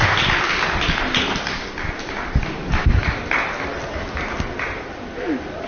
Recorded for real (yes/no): yes